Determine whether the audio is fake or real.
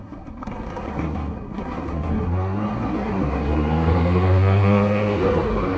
fake